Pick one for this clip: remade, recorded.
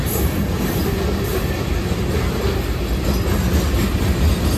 recorded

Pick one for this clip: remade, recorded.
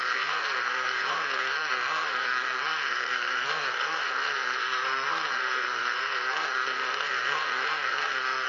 remade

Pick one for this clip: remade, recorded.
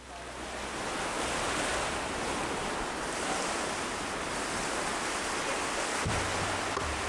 recorded